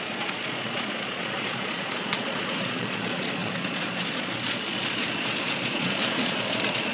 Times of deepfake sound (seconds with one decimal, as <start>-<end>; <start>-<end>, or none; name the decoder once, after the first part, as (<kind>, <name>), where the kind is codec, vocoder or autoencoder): 0.0-6.9 (vocoder, Vocos)